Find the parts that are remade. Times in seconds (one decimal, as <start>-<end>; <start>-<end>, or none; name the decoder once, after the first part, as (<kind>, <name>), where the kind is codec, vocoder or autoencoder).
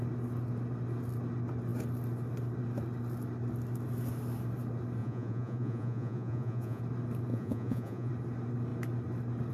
5.0-6.8 (vocoder, Vocos); 7.3-8.1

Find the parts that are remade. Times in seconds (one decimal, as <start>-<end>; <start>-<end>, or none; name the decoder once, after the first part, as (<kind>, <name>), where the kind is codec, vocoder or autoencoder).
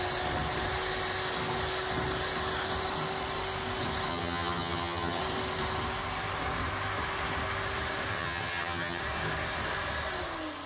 4.1-5.2 (vocoder, HiFi-GAN); 8.1-9.0